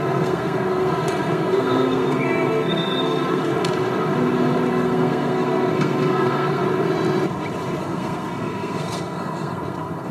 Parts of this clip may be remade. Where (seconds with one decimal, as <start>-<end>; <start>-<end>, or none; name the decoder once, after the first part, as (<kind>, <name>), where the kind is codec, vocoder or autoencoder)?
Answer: 0.0-3.5 (codec, SNAC); 4.7-6.6; 7.8-10.1